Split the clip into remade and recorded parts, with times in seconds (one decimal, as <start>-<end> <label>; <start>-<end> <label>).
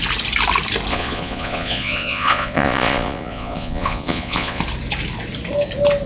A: 0.0-0.9 recorded; 0.9-4.6 remade; 4.6-6.1 recorded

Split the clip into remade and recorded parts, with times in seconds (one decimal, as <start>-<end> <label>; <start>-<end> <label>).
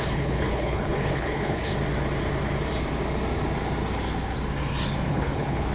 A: 0.0-1.7 remade; 1.7-5.1 recorded; 5.1-5.7 remade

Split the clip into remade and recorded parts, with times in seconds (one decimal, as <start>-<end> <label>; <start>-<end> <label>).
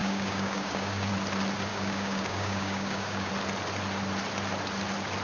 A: 0.0-1.1 remade; 1.1-1.7 recorded; 1.7-3.3 remade; 3.3-5.2 recorded